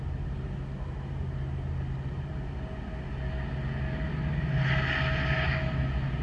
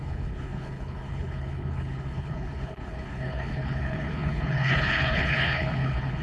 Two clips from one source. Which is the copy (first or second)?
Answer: second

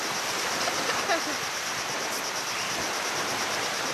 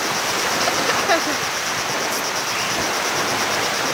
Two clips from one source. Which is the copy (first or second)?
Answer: first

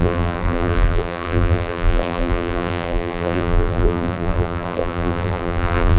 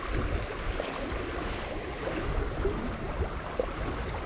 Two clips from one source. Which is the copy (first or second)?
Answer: first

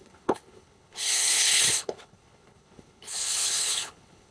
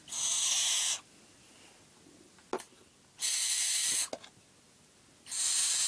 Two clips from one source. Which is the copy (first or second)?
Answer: first